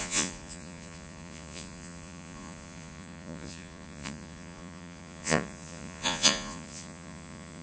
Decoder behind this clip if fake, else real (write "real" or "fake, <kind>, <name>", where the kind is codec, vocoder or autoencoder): fake, vocoder, Vocos